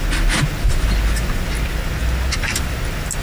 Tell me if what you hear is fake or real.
real